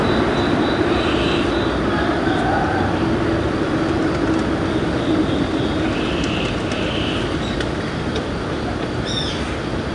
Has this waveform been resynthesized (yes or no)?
no